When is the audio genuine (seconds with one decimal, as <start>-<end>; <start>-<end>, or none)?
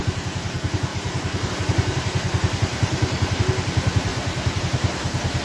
0.0-0.9; 1.5-2.7; 3.4-4.1; 4.6-5.4